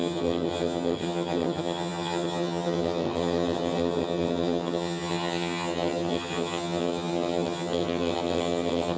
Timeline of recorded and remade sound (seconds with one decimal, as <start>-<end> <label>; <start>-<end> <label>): 0.0-9.0 remade